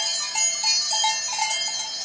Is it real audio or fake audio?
real